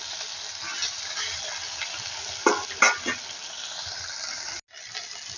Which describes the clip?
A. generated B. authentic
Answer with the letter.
B